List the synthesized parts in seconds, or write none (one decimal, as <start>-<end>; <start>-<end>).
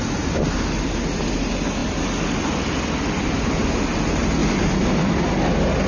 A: none